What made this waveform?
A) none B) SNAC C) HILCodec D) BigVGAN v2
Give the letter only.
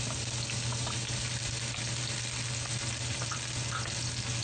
A